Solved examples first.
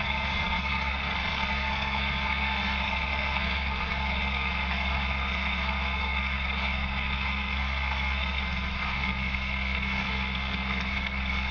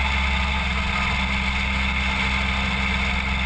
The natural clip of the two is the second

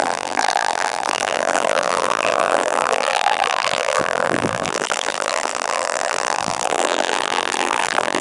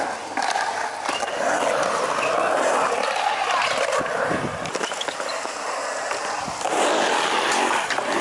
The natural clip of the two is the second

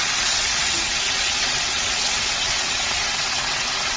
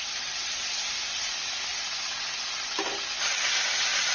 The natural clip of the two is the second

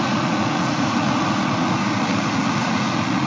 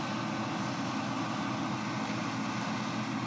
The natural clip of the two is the second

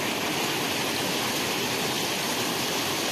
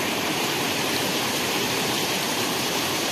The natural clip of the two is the first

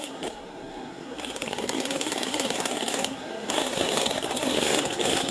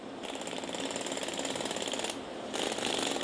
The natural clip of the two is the second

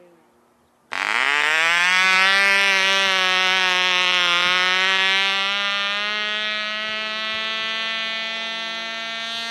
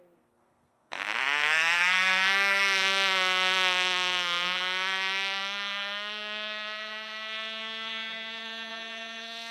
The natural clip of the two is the first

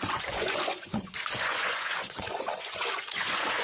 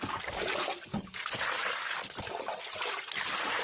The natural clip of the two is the second